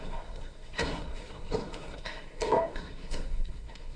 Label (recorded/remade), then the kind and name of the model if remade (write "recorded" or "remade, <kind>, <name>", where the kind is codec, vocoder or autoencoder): remade, codec, SNAC